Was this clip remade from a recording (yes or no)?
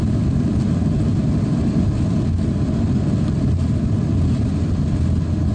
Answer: no